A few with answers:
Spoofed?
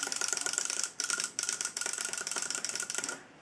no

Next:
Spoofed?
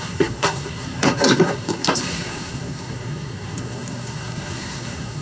yes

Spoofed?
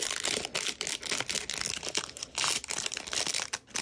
no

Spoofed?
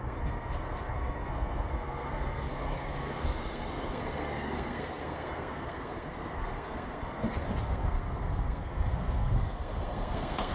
yes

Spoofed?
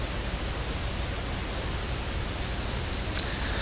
no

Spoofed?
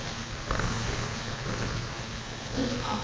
yes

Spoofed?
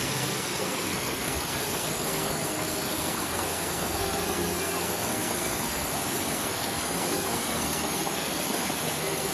yes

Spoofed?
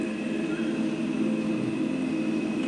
no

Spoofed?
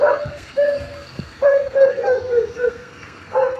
yes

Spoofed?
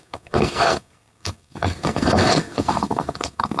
yes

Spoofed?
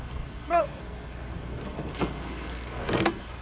yes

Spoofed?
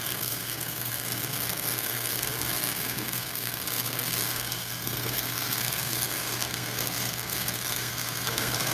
yes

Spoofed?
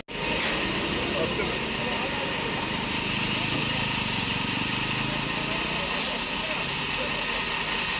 no